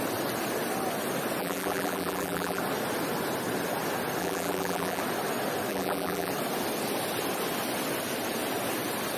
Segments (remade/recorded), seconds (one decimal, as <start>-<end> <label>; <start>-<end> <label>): 0.0-1.4 recorded; 1.4-2.6 remade; 2.6-4.2 recorded; 4.2-5.0 remade; 5.0-5.7 recorded; 5.7-6.3 remade; 6.3-9.2 recorded